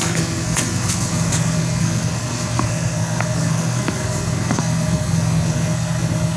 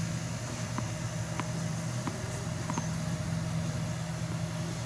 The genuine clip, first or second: second